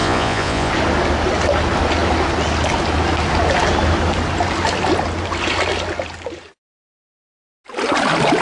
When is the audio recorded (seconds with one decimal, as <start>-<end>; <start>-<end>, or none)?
0.7-8.4